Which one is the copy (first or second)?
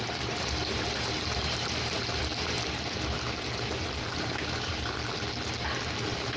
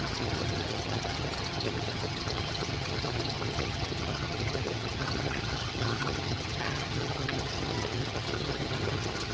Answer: second